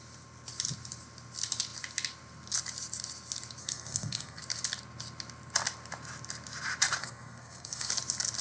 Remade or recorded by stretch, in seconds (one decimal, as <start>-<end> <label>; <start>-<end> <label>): 0.0-3.6 recorded; 3.6-4.4 remade; 4.4-7.0 recorded; 7.0-7.9 remade; 7.9-8.4 recorded